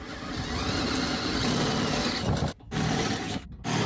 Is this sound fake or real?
real